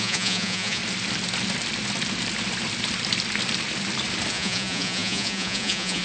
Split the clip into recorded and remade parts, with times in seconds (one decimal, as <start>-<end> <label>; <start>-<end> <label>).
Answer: 0.0-0.8 remade; 0.8-4.3 recorded; 4.3-6.0 remade